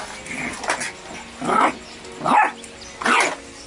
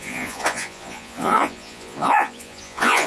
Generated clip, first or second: second